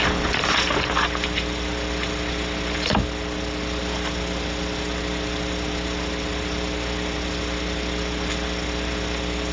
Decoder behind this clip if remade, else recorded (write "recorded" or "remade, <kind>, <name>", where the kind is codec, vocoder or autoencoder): recorded